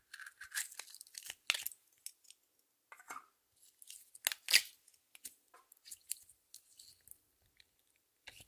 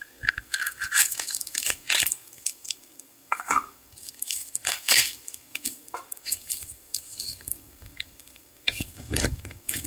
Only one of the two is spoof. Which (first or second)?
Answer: second